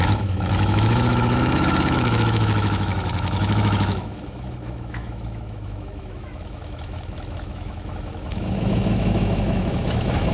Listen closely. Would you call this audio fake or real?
fake